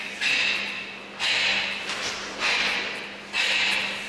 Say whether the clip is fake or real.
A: real